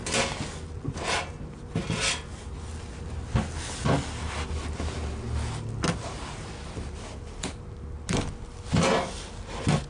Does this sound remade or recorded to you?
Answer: recorded